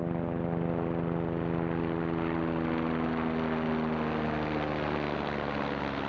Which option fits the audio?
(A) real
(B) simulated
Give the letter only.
A